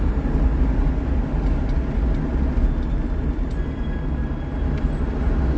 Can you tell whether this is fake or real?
real